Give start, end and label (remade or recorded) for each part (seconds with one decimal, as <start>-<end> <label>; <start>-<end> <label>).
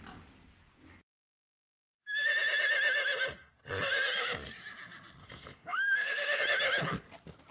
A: 0.0-5.2 recorded; 5.2-6.4 remade; 6.4-7.5 recorded